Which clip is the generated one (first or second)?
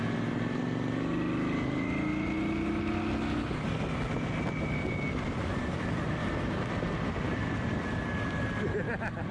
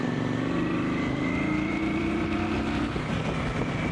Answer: second